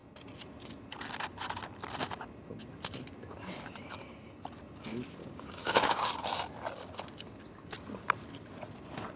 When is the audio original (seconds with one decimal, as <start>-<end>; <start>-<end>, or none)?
0.0-5.2; 6.1-9.2